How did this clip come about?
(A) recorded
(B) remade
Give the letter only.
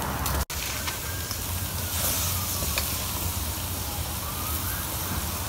A